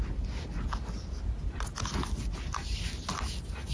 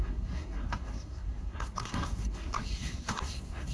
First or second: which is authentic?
first